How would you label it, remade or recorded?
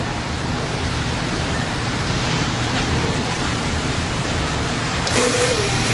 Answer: remade